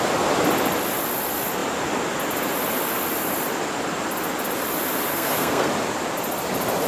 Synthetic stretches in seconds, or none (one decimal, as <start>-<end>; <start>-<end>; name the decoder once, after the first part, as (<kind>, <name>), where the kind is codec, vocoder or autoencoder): 5.1-5.7 (codec, SNAC)